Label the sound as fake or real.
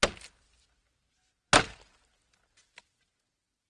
real